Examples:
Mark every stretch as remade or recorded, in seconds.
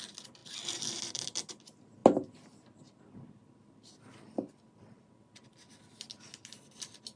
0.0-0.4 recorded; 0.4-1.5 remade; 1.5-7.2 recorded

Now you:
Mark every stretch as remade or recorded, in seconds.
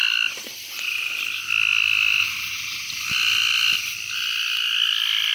0.0-1.1 remade; 1.1-1.7 recorded; 1.7-5.3 remade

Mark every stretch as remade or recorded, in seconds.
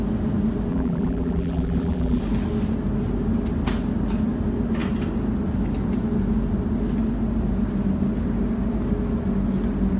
0.0-0.7 recorded; 0.7-2.2 remade; 2.2-10.0 recorded